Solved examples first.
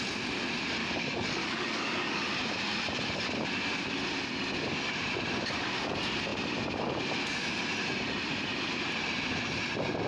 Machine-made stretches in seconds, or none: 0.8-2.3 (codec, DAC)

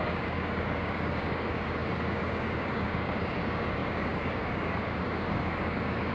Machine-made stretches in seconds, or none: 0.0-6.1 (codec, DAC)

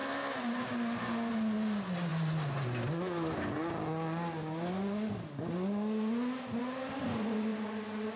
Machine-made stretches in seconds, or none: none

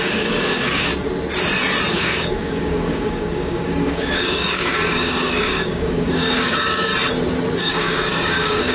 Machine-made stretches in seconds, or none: 0.0-0.9 (codec, DAC); 1.9-6.9; 7.6-8.7

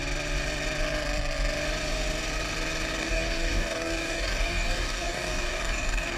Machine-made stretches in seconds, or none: 3.0-6.2 (codec, DAC)

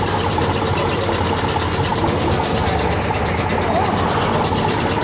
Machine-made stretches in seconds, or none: none

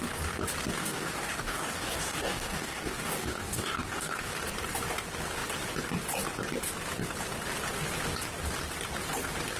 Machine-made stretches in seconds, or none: 0.8-4.3 (codec, DAC)

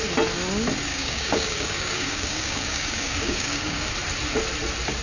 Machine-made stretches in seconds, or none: 0.9-3.9 (codec, DAC)